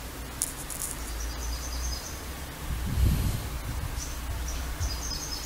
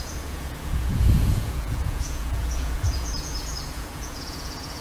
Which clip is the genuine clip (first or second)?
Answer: first